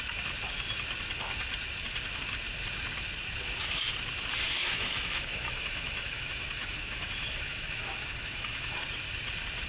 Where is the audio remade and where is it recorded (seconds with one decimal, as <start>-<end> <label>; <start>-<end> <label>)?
0.0-4.6 recorded; 4.6-8.8 remade; 8.8-9.7 recorded